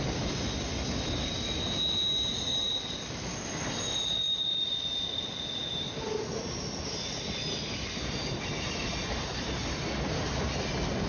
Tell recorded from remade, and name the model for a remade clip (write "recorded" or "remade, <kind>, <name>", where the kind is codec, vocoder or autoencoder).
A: recorded